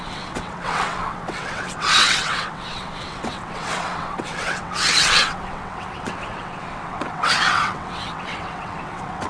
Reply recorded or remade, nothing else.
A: remade